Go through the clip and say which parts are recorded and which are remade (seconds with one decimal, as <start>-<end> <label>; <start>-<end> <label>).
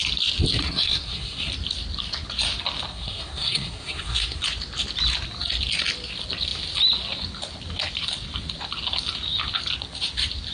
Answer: 0.0-0.6 recorded; 0.6-1.5 remade; 1.5-2.9 recorded; 2.9-4.4 remade; 4.4-10.5 recorded